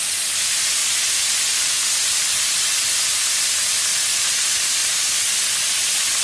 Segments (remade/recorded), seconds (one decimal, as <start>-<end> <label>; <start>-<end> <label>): 0.0-0.8 remade; 0.8-1.6 recorded; 1.6-4.8 remade; 4.8-6.2 recorded